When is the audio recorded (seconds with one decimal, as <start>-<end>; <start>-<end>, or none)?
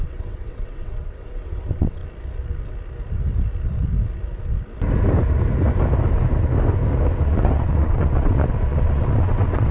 2.0-7.2